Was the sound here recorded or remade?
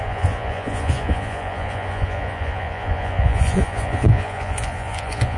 remade